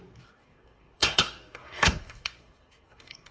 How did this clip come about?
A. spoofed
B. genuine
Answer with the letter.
A